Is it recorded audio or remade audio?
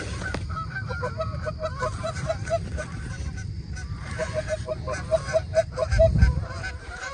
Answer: remade